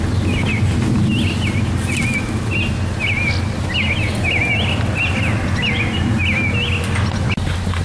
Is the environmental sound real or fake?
real